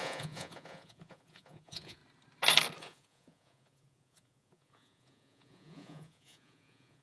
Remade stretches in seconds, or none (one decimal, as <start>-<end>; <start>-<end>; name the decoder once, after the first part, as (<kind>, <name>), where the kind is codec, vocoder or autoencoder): 0.0-2.0 (vocoder, Vocos); 2.8-7.0